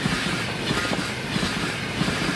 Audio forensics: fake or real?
real